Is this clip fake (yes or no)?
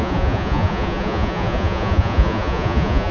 yes